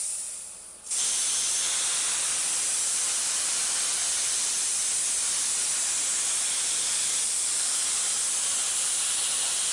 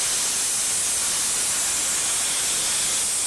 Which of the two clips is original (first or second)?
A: second